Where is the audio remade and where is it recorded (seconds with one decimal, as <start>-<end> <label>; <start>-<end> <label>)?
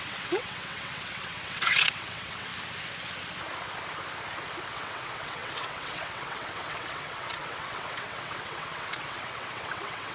0.0-2.5 remade; 2.5-4.6 recorded; 4.6-10.1 remade